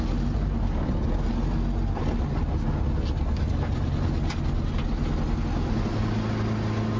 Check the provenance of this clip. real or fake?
real